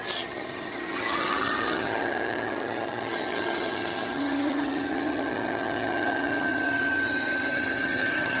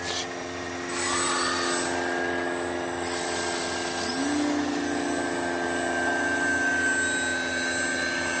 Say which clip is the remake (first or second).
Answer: first